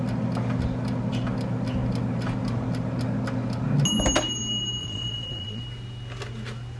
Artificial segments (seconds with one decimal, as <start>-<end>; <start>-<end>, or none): 4.8-5.6